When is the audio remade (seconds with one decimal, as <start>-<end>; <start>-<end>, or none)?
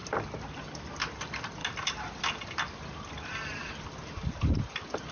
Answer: 0.0-1.6